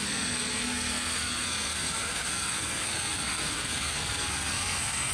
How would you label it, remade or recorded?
remade